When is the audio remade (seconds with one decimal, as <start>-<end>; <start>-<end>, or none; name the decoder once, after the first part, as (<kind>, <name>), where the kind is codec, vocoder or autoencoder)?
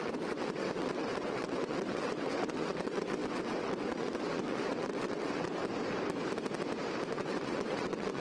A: 0.0-5.6 (vocoder, WaveNeXt); 7.1-8.2